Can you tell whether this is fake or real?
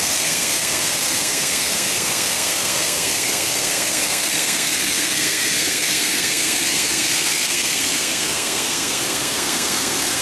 fake